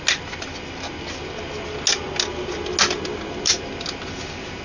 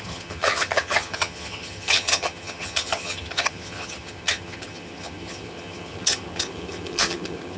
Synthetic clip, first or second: second